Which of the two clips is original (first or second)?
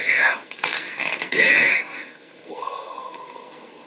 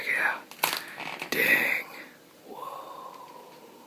second